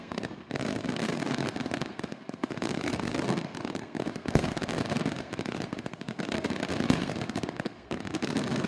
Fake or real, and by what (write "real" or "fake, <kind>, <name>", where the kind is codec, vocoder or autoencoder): fake, codec, SNAC